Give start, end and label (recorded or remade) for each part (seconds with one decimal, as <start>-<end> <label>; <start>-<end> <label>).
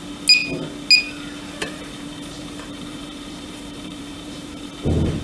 0.0-1.6 recorded; 1.6-4.7 remade; 4.7-5.2 recorded